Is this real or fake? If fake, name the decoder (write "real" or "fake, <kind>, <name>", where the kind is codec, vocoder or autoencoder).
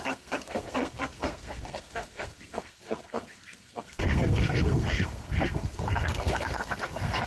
fake, codec, SNAC